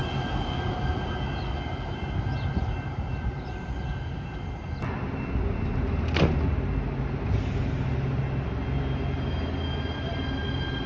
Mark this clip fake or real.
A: real